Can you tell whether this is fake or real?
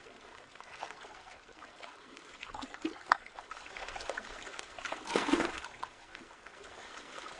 fake